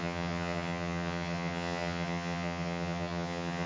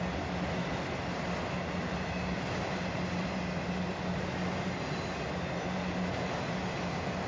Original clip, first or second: second